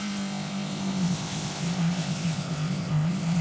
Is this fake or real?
fake